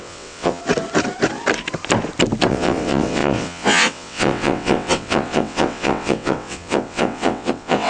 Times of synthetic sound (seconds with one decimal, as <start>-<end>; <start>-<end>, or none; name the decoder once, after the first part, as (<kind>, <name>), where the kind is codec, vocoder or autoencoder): 0.0-0.6 (vocoder, WaveNeXt); 2.5-7.9